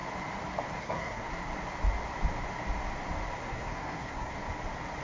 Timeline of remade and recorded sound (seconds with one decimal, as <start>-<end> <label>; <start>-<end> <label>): 0.0-0.8 recorded; 0.8-1.5 remade; 1.5-3.4 recorded; 3.4-4.3 remade; 4.3-5.0 recorded